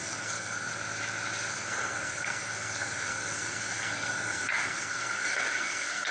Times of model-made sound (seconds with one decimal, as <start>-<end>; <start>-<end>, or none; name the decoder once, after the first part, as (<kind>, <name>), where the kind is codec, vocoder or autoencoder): 0.0-0.7 (codec, SNAC); 1.5-6.1

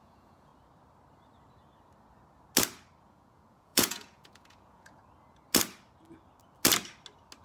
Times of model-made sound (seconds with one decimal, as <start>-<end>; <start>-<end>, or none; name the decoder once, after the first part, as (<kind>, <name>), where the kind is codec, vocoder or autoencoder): 0.0-0.5 (vocoder, Vocos); 3.0-5.0

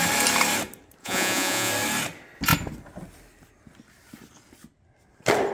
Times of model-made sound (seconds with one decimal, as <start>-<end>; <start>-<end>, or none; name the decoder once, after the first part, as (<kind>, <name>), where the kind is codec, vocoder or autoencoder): 1.0-1.7 (vocoder, Vocos)

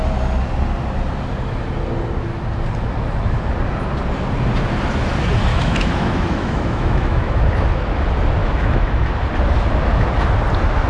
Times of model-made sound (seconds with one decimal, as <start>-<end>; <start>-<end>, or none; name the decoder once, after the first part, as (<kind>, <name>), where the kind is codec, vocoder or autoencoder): 5.5-7.4 (autoencoder, DAC-VAE); 8.4-9.1

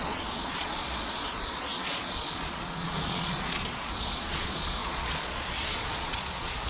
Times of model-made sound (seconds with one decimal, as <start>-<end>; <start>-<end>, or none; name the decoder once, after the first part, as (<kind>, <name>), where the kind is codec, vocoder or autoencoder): 0.0-6.7 (vocoder, Vocos)

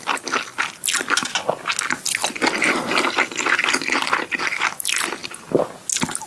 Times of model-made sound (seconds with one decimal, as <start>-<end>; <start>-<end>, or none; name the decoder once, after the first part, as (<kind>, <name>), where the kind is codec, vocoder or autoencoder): none